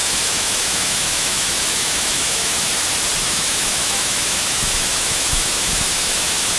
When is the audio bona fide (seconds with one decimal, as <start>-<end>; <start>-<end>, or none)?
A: 2.7-3.2